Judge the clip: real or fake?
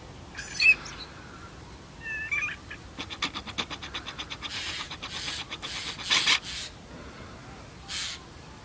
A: real